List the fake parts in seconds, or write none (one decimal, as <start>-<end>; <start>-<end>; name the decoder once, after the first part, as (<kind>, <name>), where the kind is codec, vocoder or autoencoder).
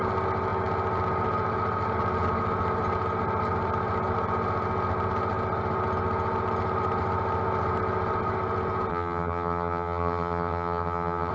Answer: 8.9-11.3 (vocoder, HiFi-GAN)